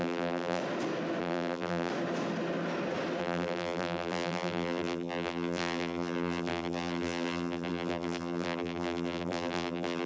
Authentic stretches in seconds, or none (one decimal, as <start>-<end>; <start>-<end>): 0.6-1.2; 1.9-3.2